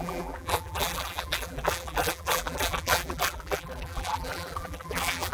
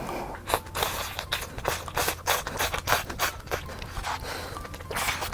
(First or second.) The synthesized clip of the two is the first